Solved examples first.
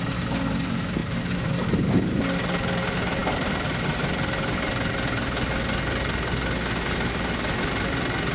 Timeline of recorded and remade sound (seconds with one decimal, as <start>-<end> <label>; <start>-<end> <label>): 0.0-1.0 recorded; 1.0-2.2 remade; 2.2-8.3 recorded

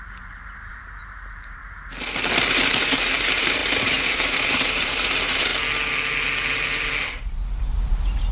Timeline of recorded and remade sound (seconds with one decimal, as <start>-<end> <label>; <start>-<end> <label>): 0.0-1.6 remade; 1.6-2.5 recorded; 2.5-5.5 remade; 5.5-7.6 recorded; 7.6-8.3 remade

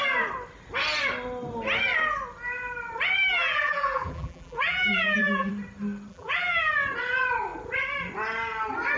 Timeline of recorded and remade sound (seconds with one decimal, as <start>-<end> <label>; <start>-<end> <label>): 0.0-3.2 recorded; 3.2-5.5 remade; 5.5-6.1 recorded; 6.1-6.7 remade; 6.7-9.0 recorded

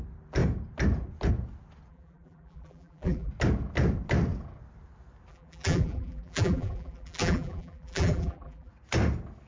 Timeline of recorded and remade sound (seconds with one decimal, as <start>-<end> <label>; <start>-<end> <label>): 0.0-1.9 recorded; 1.9-3.3 remade; 3.3-5.3 recorded; 5.3-8.7 remade; 8.7-9.5 recorded

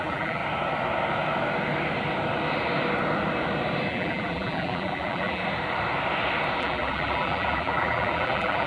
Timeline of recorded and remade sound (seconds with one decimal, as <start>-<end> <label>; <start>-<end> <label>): 0.0-0.4 remade; 0.4-3.9 recorded; 3.9-5.4 remade; 5.4-6.6 recorded; 6.6-8.7 remade

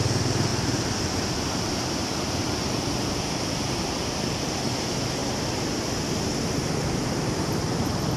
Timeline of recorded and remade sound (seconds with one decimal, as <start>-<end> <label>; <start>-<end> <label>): 0.0-0.5 recorded; 0.5-4.5 remade; 4.5-8.2 recorded